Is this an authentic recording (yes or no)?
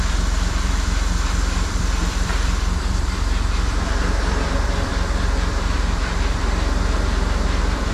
no